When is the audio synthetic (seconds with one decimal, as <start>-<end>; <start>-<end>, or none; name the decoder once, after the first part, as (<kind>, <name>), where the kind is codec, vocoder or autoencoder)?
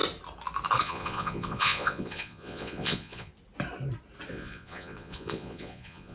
0.8-3.3 (vocoder, Vocos); 4.3-6.1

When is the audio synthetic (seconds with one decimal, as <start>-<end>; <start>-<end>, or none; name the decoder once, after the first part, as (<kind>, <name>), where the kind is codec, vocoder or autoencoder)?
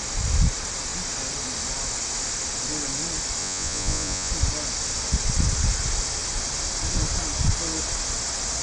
3.4-4.3 (vocoder, Vocos)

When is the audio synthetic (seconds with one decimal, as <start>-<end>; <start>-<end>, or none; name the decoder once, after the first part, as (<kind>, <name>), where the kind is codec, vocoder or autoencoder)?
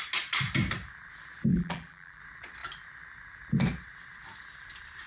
1.5-2.2 (vocoder, BigVGAN v2)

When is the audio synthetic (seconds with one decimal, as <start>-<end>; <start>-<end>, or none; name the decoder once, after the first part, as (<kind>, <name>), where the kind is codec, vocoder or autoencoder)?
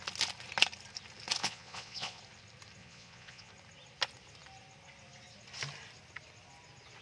1.4-2.2 (vocoder, Vocos); 2.8-3.5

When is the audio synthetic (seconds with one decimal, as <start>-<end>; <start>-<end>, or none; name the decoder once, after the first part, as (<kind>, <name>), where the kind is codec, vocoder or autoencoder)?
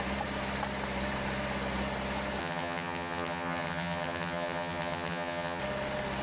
2.4-5.6 (vocoder, HiFi-GAN)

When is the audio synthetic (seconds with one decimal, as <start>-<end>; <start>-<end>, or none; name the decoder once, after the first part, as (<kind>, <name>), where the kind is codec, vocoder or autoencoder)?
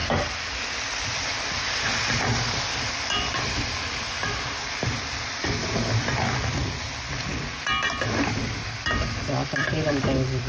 1.0-10.5 (vocoder, BigVGAN v2)